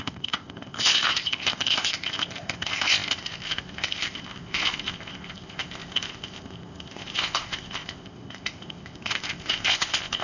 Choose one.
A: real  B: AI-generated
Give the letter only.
B